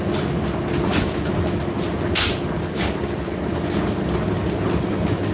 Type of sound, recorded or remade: recorded